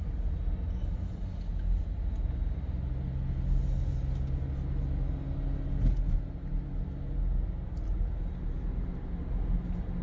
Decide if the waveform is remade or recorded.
recorded